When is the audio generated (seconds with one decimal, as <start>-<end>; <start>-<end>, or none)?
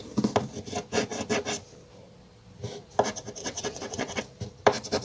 3.4-4.2